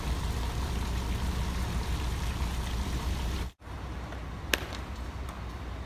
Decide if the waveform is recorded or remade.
recorded